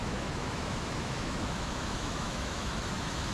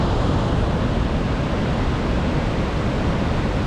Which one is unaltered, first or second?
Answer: second